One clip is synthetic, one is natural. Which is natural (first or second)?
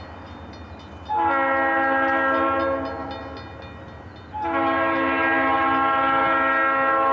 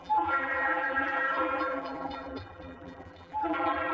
first